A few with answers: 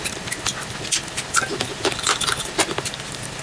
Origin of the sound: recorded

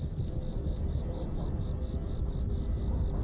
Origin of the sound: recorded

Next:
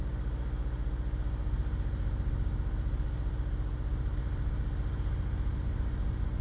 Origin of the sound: recorded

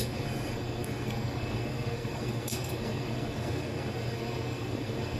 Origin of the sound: remade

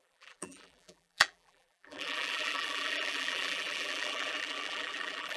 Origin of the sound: remade